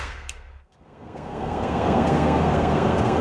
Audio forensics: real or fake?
fake